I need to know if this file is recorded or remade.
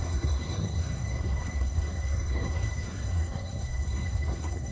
remade